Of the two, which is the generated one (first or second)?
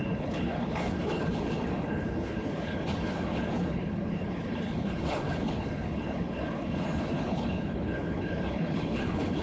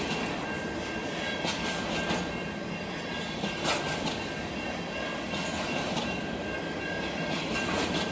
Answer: first